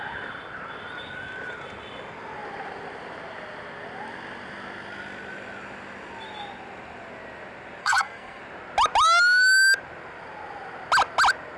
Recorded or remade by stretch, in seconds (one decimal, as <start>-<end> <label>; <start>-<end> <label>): 0.0-7.8 recorded; 7.8-8.4 remade; 8.4-11.6 recorded